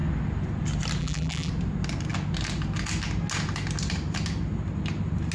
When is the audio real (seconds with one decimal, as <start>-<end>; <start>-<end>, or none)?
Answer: 0.0-1.0; 1.5-5.3